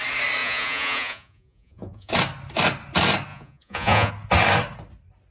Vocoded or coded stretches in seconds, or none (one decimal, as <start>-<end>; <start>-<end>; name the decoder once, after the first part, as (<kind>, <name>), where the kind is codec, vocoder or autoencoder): 0.4-2.1 (vocoder, Vocos); 3.3-4.1